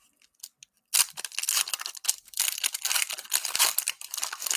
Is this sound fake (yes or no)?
no